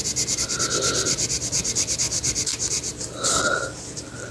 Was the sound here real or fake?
real